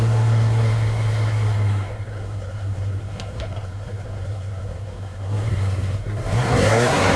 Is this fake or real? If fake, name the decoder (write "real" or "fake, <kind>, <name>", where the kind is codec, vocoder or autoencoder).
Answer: fake, codec, SNAC